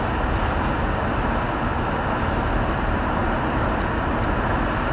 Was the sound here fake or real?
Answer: real